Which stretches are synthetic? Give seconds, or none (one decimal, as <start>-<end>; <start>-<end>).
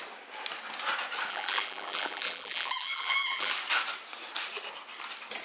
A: 1.3-3.5